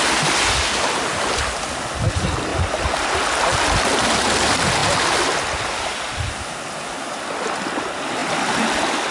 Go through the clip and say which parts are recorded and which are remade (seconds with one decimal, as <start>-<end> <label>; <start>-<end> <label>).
0.0-9.1 recorded